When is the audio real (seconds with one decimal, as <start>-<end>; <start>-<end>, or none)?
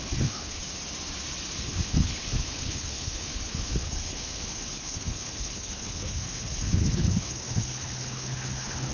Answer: 0.6-1.6